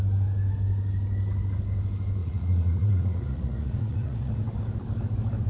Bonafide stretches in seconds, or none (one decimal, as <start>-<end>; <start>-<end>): 0.0-2.2; 4.3-5.5